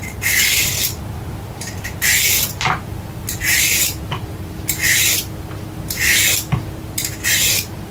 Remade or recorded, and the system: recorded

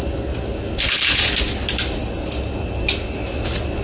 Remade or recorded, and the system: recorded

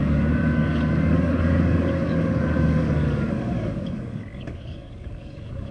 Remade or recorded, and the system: remade, codec, DAC